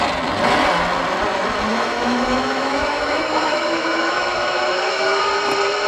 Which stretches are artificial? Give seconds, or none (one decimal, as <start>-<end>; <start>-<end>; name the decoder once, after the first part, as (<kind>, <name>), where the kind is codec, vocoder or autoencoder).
1.7-5.2 (autoencoder, DAC-VAE)